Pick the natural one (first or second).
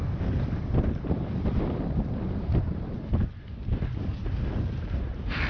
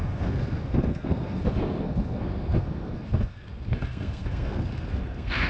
first